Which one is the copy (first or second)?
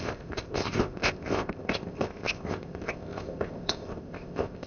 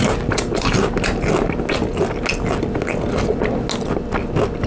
first